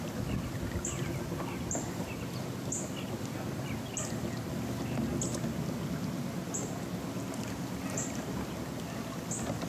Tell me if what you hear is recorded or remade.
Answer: recorded